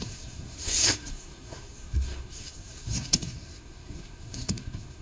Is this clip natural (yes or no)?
no